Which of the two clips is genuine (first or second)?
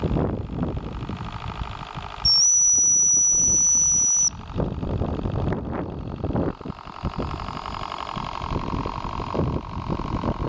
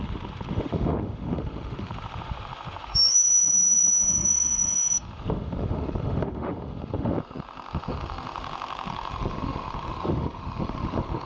first